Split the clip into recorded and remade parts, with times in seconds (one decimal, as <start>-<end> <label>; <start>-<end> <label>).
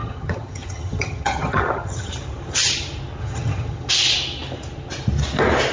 0.0-2.1 remade; 2.1-3.2 recorded; 3.2-3.9 remade; 3.9-5.7 recorded